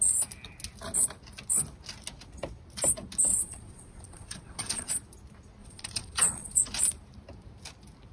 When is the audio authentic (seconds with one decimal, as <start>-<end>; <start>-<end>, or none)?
0.0-3.3; 4.9-5.6; 6.6-8.1